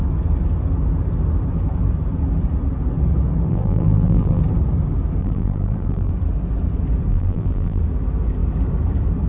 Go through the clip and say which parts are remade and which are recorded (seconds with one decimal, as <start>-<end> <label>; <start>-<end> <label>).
0.0-3.5 recorded; 3.5-4.4 remade; 4.4-5.2 recorded; 5.2-6.1 remade; 6.1-7.1 recorded; 7.1-7.8 remade; 7.8-9.3 recorded